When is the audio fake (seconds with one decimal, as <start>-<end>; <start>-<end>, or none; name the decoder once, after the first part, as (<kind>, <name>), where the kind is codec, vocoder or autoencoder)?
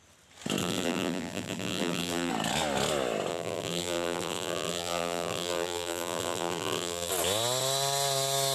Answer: 0.6-2.3 (vocoder, BigVGAN v2); 3.3-7.1